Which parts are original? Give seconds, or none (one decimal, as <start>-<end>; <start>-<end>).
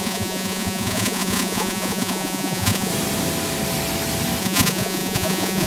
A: 2.9-4.4